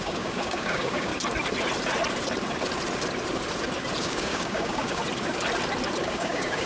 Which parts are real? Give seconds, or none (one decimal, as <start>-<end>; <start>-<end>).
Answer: 1.1-4.0; 5.0-6.0